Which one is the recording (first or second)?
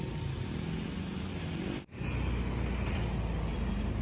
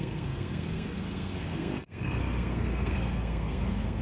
first